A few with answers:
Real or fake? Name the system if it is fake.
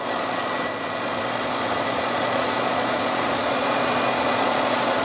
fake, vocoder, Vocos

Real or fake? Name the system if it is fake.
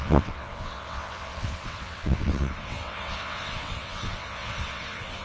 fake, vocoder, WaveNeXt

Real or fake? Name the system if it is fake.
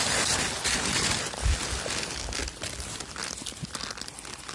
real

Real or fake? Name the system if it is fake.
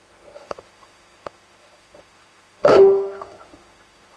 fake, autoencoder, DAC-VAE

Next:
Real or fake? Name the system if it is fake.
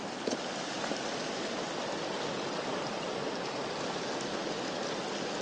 real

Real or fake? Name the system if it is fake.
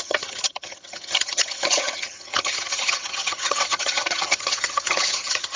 fake, vocoder, HiFi-GAN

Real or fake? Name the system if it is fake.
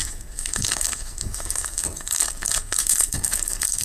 fake, codec, SNAC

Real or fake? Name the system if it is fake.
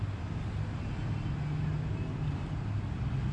real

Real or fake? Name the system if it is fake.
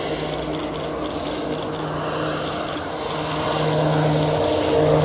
real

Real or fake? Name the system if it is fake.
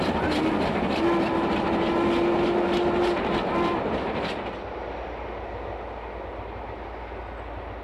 real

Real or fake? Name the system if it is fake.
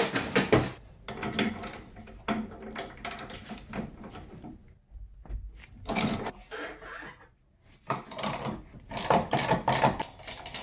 real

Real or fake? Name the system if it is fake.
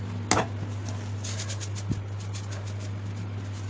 real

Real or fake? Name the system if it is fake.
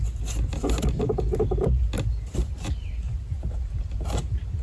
real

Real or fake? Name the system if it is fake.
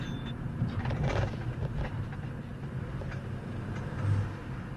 real